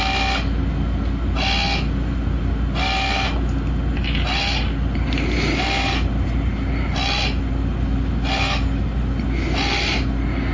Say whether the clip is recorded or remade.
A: recorded